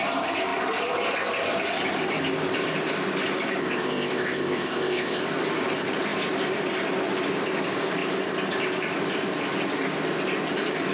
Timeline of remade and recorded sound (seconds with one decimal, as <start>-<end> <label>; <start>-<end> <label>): 0.0-3.6 recorded; 3.6-5.2 remade; 5.2-10.9 recorded